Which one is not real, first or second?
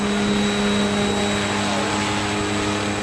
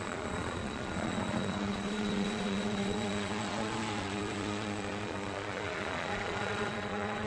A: second